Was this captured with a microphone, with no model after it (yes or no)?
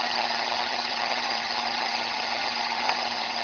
no